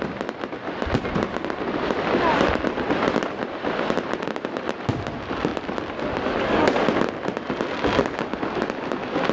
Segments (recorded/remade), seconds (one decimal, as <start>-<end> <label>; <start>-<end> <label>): 0.0-9.3 recorded